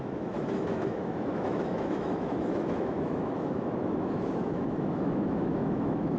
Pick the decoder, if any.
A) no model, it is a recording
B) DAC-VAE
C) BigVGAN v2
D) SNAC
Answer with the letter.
B